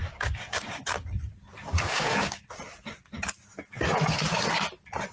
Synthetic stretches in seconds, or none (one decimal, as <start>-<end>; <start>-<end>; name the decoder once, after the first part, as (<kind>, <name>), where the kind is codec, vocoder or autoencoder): 0.0-0.8 (codec, DAC); 1.7-2.4

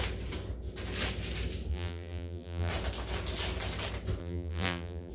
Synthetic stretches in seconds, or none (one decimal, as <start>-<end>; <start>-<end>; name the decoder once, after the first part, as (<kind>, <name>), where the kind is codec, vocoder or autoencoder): 1.7-2.7 (vocoder, BigVGAN v2); 4.2-5.1